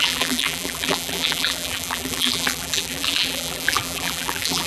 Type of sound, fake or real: fake